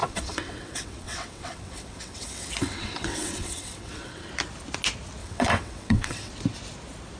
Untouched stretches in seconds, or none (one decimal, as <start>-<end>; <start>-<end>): 4.3-5.2; 6.3-7.2